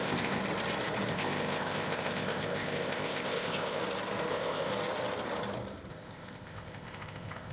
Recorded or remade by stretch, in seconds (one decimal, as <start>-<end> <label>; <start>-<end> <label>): 0.0-0.4 remade; 0.4-1.1 recorded; 1.1-3.8 remade; 3.8-4.3 recorded; 4.3-4.7 remade; 4.7-5.9 recorded; 5.9-7.5 remade